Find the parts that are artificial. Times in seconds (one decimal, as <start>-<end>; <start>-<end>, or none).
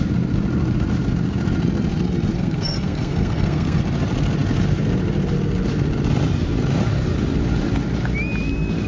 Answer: 2.3-3.8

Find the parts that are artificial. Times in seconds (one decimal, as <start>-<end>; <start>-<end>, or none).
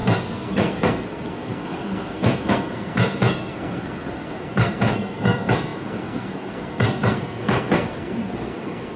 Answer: 0.0-9.0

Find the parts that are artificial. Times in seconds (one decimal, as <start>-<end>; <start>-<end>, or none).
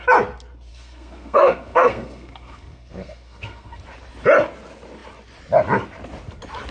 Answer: 0.7-3.8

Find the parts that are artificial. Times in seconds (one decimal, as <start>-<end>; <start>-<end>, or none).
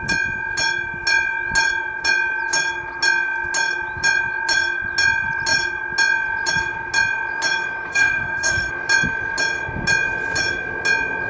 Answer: 7.9-8.7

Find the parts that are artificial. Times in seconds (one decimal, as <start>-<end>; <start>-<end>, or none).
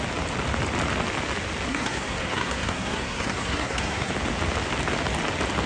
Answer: 1.7-4.1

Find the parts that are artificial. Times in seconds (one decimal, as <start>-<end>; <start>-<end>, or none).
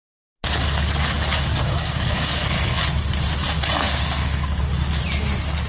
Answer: 1.8-2.8; 3.8-4.6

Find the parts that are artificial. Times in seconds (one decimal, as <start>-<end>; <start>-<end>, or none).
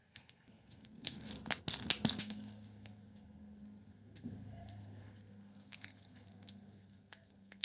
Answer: 0.0-1.3; 2.2-7.6